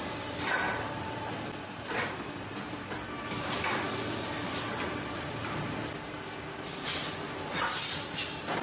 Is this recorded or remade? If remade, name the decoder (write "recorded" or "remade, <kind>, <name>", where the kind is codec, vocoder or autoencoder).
recorded